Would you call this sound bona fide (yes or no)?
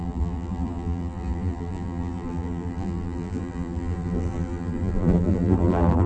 no